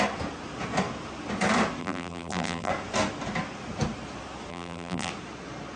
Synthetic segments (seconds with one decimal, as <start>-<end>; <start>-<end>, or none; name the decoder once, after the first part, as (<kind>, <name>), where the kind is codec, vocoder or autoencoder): 1.8-2.7 (vocoder, BigVGAN v2); 4.5-5.1